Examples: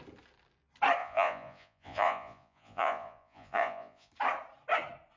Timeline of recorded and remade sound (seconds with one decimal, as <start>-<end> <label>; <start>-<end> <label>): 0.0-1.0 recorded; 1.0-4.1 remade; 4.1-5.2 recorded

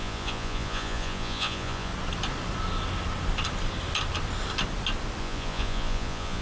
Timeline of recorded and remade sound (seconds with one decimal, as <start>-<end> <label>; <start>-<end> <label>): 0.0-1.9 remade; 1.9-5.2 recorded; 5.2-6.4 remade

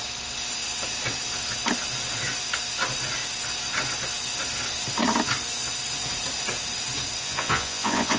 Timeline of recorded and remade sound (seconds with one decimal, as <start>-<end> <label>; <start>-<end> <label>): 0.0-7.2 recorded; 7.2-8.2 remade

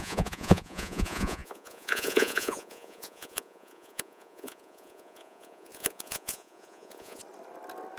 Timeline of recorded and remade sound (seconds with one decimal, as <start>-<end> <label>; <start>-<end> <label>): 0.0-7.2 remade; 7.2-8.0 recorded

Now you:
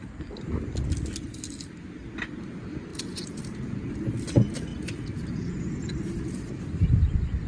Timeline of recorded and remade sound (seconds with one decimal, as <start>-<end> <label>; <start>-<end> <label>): 0.0-2.9 recorded; 2.9-3.9 remade; 3.9-4.7 recorded; 4.7-5.9 remade; 5.9-7.5 recorded